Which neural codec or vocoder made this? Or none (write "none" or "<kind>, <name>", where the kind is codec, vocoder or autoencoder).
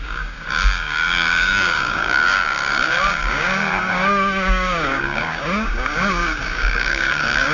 codec, DAC